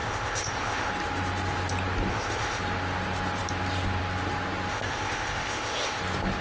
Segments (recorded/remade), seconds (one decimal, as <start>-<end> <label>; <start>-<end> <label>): 0.0-0.9 remade; 0.9-2.1 recorded; 2.1-2.6 remade; 2.6-4.7 recorded; 4.7-6.0 remade; 6.0-6.4 recorded